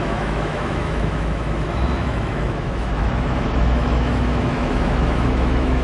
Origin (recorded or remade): remade